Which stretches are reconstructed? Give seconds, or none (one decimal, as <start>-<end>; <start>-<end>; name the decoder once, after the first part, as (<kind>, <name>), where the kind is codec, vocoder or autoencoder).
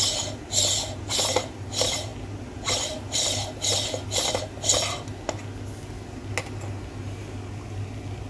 none